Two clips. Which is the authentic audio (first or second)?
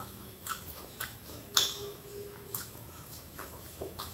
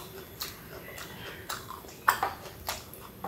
second